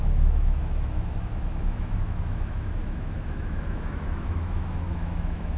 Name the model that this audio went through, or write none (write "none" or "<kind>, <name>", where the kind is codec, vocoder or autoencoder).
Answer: autoencoder, DAC-VAE